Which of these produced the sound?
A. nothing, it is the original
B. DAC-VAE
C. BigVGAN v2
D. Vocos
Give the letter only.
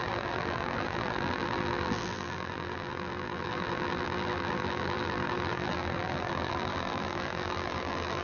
C